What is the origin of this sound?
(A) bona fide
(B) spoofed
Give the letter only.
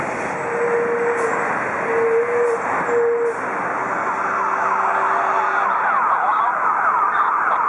A